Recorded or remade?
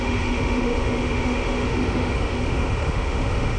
remade